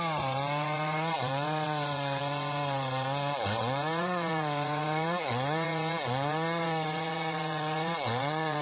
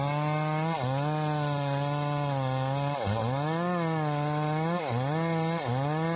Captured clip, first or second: second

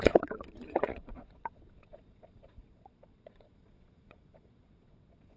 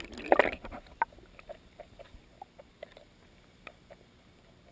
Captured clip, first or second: second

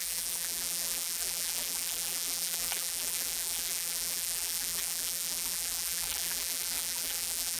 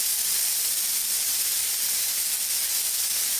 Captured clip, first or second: second